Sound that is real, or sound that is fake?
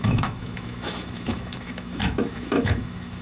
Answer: fake